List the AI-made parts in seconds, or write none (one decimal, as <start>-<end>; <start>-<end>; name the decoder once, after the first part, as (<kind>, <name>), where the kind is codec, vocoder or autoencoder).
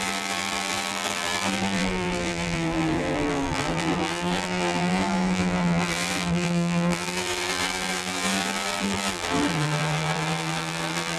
0.0-11.2 (vocoder, BigVGAN v2)